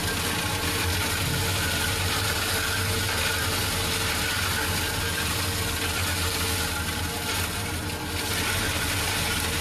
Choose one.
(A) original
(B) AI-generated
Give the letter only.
A